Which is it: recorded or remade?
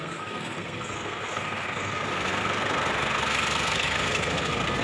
remade